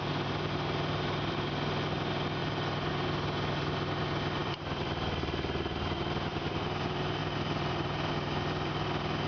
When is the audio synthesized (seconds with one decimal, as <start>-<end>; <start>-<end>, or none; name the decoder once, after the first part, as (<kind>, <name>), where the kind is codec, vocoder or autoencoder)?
2.4-2.9 (vocoder, BigVGAN v2); 4.4-6.0; 7.2-8.1